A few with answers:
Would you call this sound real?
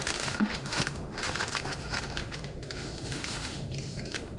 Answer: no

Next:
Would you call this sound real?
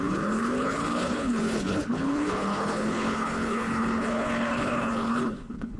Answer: no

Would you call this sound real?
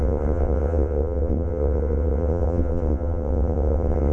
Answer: no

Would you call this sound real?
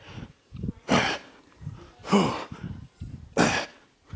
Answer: yes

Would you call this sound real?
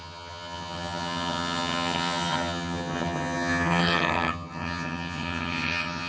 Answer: no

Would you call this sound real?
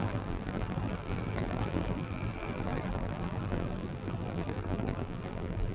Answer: no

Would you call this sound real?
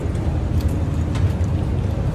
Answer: yes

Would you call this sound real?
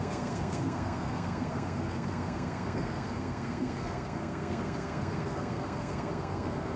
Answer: no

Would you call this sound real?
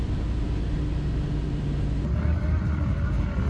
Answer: yes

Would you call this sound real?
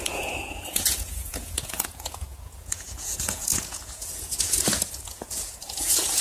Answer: no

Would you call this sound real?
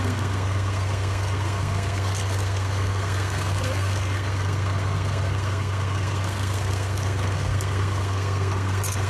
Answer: no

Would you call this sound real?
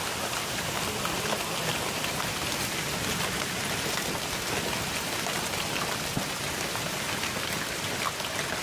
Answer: yes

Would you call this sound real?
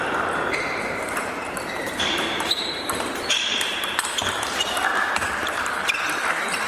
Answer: no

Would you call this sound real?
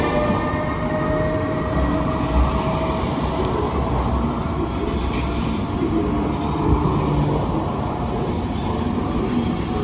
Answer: yes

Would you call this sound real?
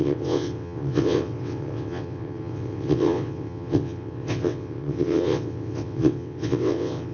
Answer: no